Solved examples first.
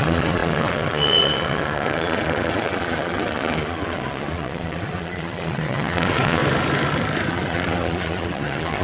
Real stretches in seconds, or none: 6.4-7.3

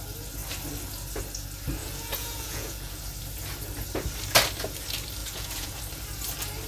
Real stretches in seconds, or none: 0.0-1.8; 3.0-5.2; 5.8-6.7

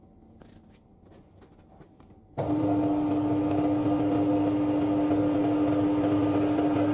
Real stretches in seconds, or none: 0.0-6.9

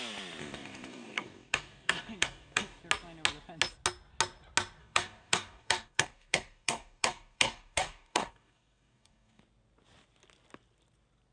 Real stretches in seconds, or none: 0.0-0.4; 2.8-4.8; 9.4-11.3

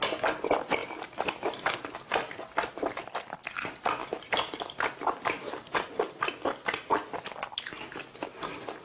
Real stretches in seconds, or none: 0.0-0.8; 1.8-4.0; 6.3-8.8

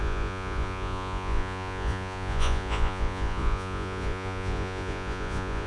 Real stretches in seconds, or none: none

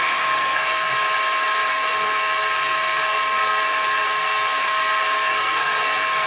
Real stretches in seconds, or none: 0.9-1.7

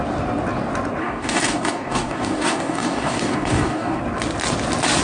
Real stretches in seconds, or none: 0.0-1.0; 4.0-5.0